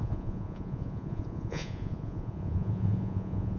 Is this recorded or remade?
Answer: remade